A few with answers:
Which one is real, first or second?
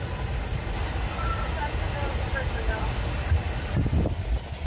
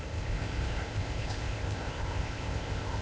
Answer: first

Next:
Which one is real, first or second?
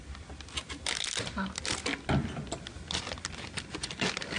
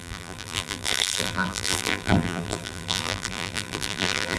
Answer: first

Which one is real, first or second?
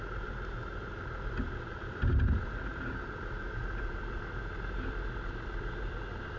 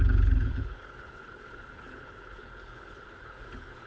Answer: first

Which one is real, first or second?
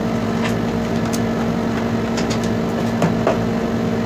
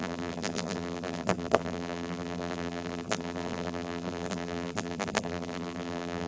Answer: first